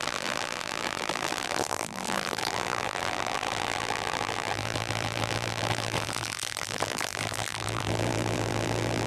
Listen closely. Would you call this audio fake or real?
fake